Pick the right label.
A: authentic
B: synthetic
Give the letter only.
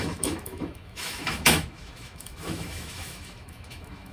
B